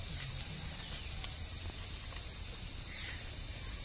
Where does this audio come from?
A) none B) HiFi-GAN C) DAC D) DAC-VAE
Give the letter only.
A